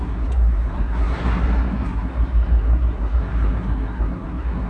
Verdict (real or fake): fake